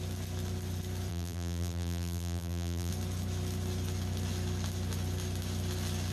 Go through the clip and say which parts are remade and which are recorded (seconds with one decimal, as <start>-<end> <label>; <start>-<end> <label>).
0.0-1.1 recorded; 1.1-2.9 remade; 2.9-6.1 recorded